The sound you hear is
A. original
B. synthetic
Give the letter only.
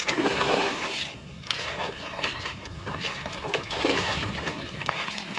B